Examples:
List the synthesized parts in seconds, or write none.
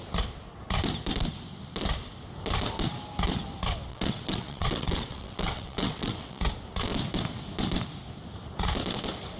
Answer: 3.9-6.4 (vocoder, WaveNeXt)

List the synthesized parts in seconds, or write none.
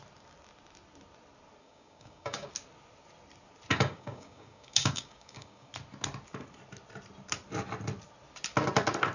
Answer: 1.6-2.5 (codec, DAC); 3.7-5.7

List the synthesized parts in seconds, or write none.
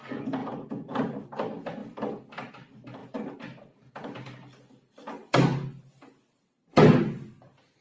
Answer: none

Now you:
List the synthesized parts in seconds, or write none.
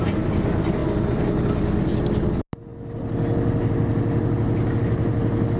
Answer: none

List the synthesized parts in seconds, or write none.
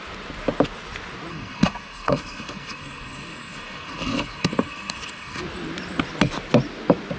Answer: 1.3-5.4 (codec, SNAC)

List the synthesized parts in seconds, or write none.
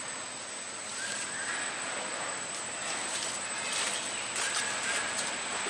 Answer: none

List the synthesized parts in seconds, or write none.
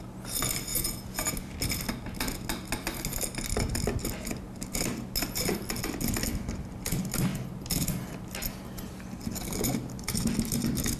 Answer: 0.7-1.3 (vocoder, Vocos)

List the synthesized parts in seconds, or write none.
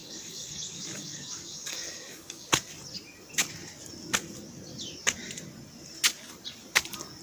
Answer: 0.0-2.5 (codec, DAC)